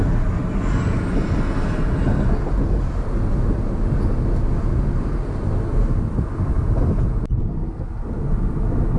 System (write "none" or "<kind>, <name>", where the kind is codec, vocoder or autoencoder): none